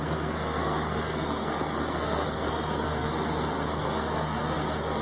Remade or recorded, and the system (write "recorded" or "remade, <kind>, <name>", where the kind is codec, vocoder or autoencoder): remade, codec, SNAC